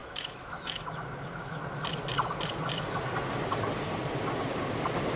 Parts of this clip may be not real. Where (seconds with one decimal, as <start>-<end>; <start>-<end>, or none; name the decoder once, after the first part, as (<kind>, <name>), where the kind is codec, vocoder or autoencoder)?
0.0-1.6 (autoencoder, DAC-VAE)